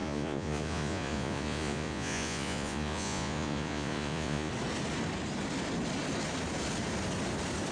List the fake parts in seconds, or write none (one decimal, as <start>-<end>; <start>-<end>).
0.0-4.5